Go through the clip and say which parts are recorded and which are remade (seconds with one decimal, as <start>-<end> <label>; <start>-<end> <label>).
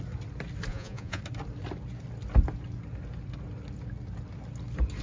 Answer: 0.0-0.7 recorded; 0.7-1.2 remade; 1.2-5.0 recorded